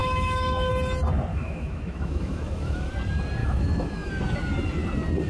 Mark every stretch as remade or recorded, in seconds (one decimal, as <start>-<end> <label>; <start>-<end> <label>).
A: 0.0-0.7 remade; 0.7-1.3 recorded; 1.3-2.9 remade; 2.9-3.4 recorded; 3.4-4.1 remade; 4.1-5.3 recorded